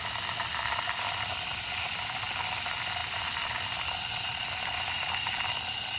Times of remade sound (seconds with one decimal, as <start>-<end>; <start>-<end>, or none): none